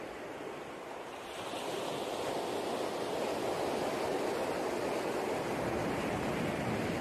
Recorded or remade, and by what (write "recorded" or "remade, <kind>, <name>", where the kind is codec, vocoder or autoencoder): recorded